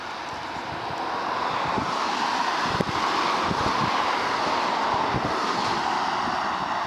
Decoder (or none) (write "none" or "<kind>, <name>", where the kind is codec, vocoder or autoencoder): none